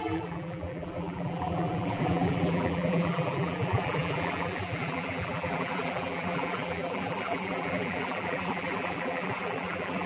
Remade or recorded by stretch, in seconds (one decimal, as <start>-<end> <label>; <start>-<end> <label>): 0.0-10.1 remade